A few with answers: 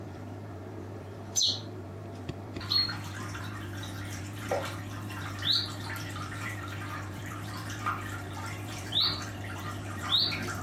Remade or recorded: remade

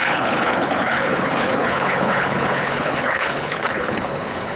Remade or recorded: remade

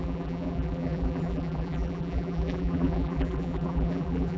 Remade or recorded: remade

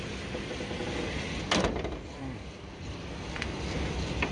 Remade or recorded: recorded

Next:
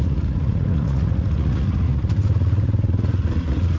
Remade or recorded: remade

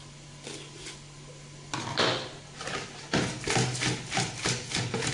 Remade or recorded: recorded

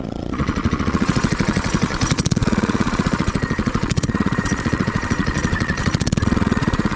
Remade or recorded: remade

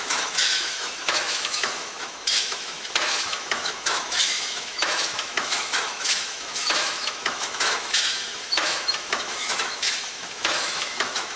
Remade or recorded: remade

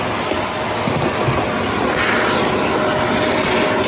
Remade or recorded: recorded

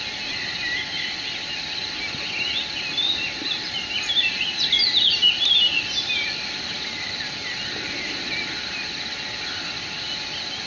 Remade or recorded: recorded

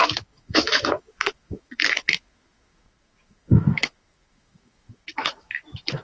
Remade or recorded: remade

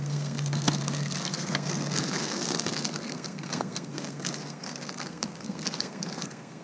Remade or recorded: remade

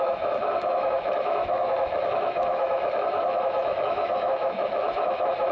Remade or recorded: remade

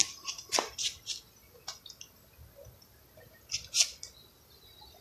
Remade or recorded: recorded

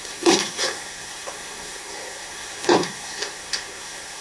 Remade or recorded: remade